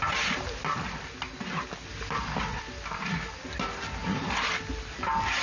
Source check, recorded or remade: recorded